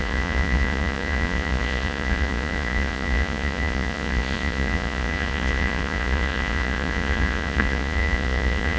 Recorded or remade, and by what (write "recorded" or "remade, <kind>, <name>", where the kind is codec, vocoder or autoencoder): remade, vocoder, Vocos